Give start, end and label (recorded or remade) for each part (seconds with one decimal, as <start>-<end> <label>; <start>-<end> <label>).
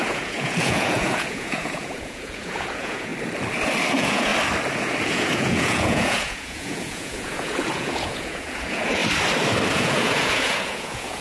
0.0-3.1 remade; 3.1-3.9 recorded; 3.9-4.3 remade; 4.3-5.0 recorded; 5.0-9.0 remade; 9.0-9.7 recorded; 9.7-11.2 remade